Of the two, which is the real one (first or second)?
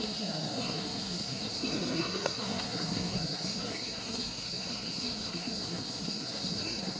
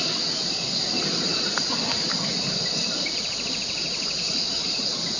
second